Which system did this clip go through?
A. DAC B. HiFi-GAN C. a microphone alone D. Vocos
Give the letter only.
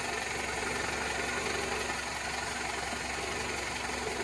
C